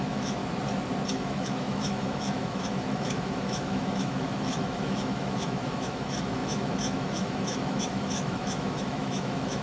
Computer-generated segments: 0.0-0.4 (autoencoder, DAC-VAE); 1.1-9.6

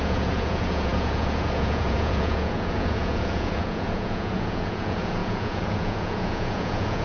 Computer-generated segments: 0.0-7.0 (vocoder, Vocos)

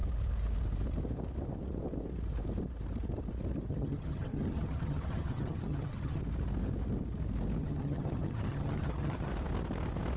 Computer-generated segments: 3.7-6.2 (vocoder, HiFi-GAN); 7.6-9.3

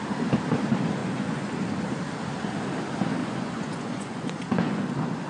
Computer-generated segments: 1.0-1.6 (vocoder, Vocos); 3.2-4.8

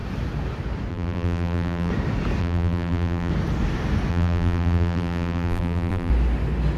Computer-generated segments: 0.9-1.9 (vocoder, BigVGAN v2); 2.4-3.3; 4.1-6.1